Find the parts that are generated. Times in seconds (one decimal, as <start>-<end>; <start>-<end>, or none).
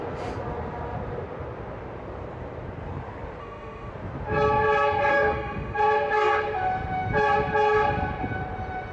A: 3.4-3.9; 5.1-5.8